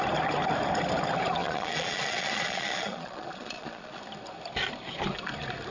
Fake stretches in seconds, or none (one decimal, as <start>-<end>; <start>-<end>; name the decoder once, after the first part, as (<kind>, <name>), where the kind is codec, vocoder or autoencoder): 1.4-4.0 (vocoder, Vocos)